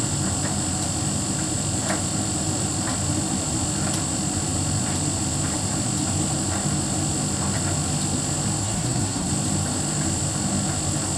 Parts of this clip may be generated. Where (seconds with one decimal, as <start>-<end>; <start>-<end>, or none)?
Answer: 8.6-9.3